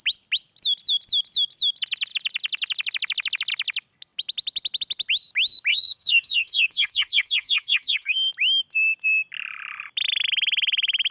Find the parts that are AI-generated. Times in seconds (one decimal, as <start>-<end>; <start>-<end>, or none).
5.7-8.3